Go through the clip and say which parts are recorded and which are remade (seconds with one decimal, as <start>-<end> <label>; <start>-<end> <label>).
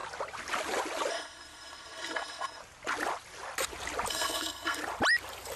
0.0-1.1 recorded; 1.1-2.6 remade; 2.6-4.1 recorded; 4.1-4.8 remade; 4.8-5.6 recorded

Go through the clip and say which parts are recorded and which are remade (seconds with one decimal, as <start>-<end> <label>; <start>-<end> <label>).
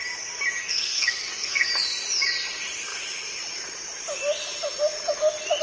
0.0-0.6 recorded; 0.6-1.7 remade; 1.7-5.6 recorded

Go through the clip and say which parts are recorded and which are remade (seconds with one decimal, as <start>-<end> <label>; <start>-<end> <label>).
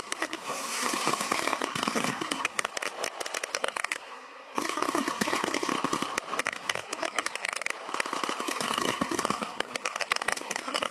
0.0-2.7 remade; 2.7-3.5 recorded; 3.5-5.7 remade; 5.7-6.4 recorded; 6.4-7.7 remade; 7.7-8.4 recorded; 8.4-10.9 remade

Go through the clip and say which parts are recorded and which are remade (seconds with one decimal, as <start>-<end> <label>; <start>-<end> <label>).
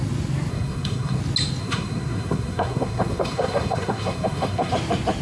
0.0-0.5 recorded; 0.5-1.2 remade; 1.2-1.6 recorded; 1.6-4.7 remade; 4.7-5.2 recorded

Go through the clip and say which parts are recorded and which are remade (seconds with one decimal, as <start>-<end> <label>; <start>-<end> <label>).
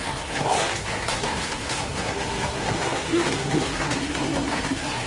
0.0-5.1 remade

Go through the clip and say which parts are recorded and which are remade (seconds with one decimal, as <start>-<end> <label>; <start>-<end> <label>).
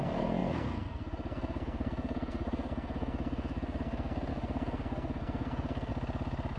0.0-5.9 remade; 5.9-6.6 recorded